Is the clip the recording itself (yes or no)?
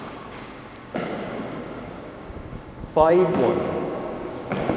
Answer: no